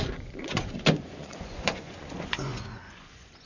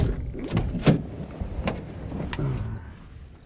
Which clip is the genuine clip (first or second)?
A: second